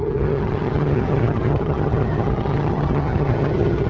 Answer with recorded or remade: remade